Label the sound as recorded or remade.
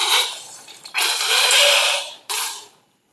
remade